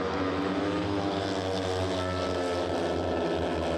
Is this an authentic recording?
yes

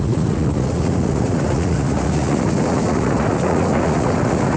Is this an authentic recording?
no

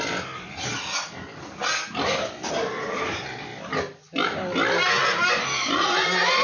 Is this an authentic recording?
yes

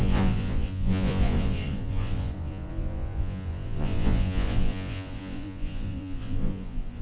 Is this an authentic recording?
no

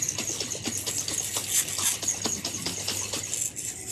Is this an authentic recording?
yes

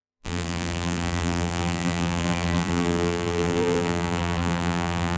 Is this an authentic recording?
no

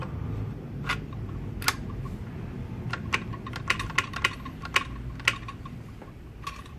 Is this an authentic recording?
yes